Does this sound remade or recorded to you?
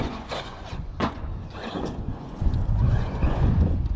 remade